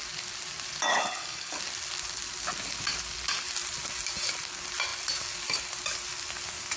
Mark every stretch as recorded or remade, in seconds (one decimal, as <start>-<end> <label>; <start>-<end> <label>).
0.0-0.9 recorded; 0.9-1.6 remade; 1.6-6.8 recorded